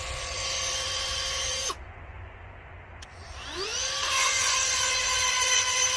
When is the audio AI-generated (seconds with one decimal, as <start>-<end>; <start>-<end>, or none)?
0.0-6.0